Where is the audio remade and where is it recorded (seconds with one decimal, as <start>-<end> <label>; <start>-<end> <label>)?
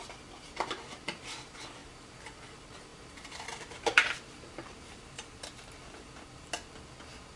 0.0-1.8 recorded; 1.8-2.4 remade; 2.4-2.9 recorded; 2.9-6.5 remade; 6.5-7.4 recorded